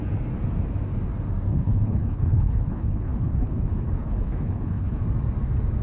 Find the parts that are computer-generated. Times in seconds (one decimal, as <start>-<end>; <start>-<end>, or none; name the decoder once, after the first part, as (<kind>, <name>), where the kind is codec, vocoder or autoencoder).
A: 1.5-5.0 (codec, HILCodec)